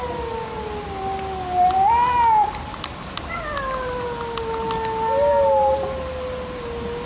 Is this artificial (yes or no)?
no